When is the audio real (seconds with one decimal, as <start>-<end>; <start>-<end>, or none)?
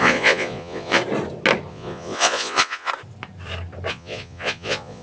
1.0-1.7; 2.9-3.9